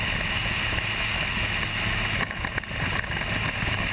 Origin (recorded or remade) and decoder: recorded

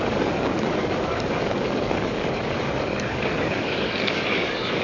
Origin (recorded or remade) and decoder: remade, codec, DAC